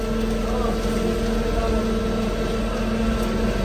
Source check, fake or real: real